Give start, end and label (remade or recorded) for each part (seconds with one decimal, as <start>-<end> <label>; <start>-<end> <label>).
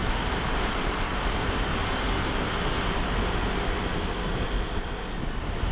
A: 0.0-1.6 remade; 1.6-5.7 recorded